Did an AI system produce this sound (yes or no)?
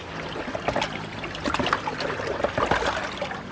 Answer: no